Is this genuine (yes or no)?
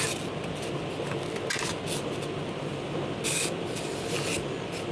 yes